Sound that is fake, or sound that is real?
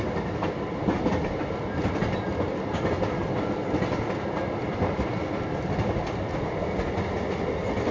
real